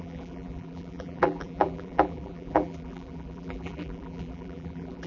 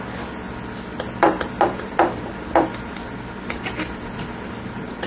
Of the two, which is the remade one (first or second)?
first